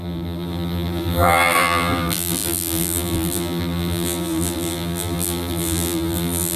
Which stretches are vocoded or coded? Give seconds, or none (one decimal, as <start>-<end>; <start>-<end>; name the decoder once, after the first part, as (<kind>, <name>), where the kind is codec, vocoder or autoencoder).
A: 0.0-6.6 (vocoder, BigVGAN v2)

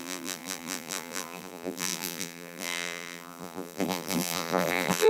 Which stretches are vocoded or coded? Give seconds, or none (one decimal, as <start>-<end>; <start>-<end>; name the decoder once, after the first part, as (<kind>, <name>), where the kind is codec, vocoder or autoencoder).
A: 0.0-5.1 (vocoder, BigVGAN v2)